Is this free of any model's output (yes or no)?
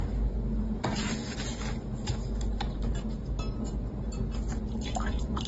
yes